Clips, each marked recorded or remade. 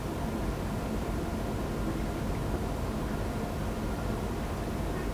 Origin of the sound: recorded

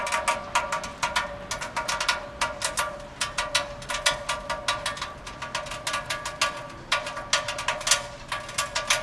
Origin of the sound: recorded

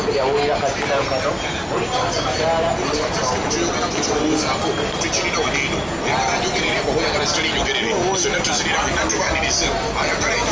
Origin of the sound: recorded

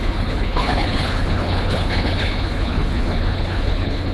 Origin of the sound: remade